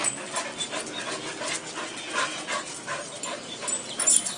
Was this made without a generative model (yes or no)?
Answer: yes